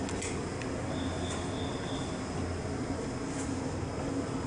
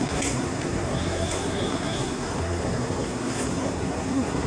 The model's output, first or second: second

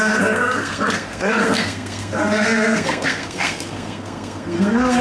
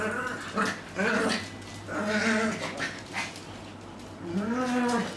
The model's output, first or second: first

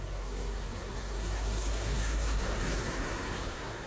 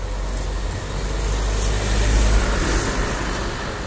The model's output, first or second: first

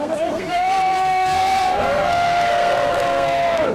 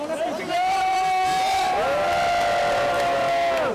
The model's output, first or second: first